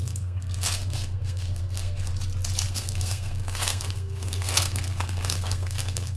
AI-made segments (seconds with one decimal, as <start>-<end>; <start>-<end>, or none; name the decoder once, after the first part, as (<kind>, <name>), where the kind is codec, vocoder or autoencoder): 0.0-2.1 (codec, SNAC); 2.7-6.2